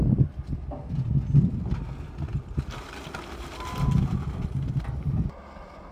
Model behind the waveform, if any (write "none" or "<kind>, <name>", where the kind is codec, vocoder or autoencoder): none